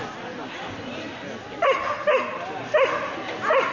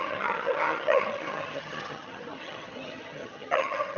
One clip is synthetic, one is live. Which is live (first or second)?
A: first